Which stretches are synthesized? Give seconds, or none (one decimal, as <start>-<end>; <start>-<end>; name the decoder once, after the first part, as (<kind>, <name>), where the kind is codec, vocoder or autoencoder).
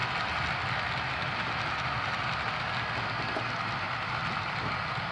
none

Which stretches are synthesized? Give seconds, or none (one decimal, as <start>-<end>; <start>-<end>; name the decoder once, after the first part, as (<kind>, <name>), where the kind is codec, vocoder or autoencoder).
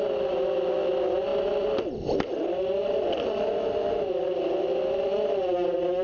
none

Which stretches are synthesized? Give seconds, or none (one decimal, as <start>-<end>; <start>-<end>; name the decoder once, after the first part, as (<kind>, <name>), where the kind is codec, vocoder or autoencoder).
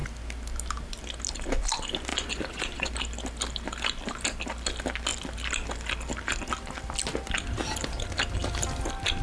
2.1-2.9 (vocoder, Vocos)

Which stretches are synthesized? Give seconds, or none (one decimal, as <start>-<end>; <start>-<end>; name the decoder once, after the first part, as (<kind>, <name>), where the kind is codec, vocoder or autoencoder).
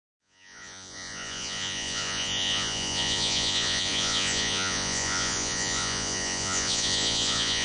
0.0-7.6 (vocoder, Vocos)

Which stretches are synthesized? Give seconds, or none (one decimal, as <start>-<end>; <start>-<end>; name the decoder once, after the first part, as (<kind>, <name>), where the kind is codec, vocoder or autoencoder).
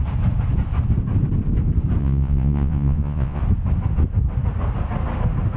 2.0-3.4 (vocoder, Vocos)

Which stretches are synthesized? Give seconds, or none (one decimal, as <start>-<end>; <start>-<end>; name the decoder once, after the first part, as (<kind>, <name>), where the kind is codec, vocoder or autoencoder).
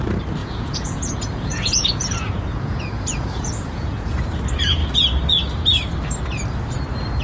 0.4-4.1 (vocoder, Vocos)